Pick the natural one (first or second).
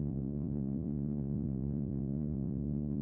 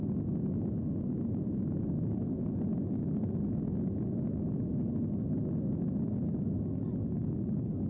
second